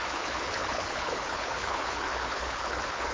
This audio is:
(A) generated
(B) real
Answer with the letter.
A